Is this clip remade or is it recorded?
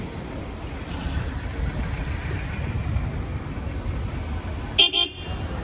recorded